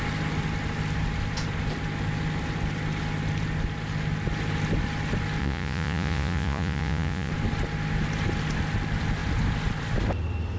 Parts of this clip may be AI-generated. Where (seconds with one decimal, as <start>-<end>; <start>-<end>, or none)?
5.4-7.3